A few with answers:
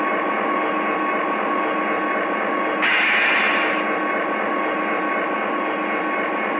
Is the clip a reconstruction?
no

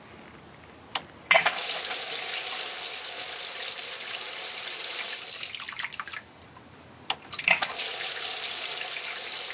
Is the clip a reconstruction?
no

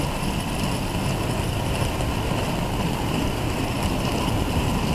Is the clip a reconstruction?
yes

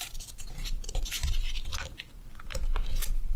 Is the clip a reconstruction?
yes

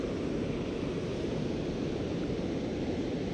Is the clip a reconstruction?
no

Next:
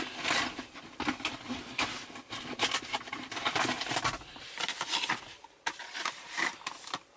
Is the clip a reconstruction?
yes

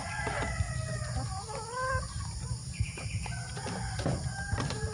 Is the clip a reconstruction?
no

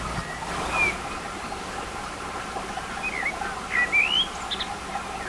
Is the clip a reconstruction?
no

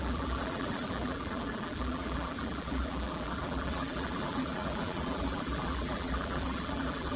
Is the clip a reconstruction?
yes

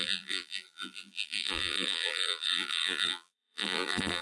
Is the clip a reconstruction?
yes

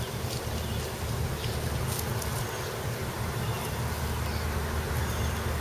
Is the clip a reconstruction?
no